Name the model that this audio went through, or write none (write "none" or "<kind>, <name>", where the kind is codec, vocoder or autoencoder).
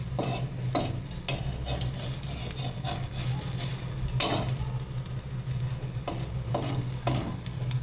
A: none